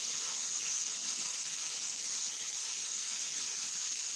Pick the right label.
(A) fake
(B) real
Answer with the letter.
A